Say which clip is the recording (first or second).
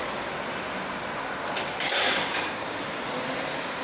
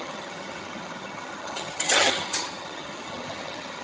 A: first